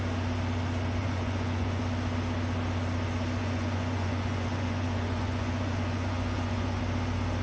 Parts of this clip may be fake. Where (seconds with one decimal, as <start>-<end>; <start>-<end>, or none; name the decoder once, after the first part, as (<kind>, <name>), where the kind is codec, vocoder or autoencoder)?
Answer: 1.0-1.8 (vocoder, Vocos); 3.4-6.8